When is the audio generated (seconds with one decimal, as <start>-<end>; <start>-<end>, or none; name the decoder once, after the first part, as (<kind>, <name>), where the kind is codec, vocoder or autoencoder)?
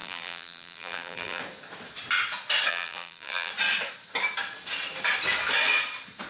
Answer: 0.0-1.4 (vocoder, BigVGAN v2); 2.7-3.5